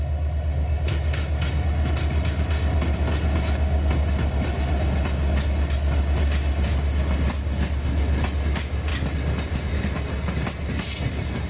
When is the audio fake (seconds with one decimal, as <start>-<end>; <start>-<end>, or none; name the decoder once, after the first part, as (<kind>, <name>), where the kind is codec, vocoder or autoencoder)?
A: none